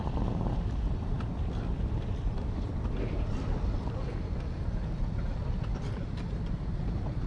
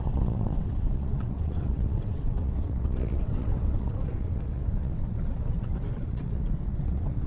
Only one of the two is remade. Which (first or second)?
second